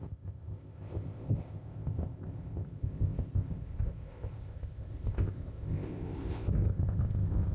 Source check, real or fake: fake